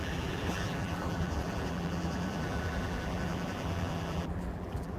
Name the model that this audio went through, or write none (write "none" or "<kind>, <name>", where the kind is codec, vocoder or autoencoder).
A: vocoder, BigVGAN v2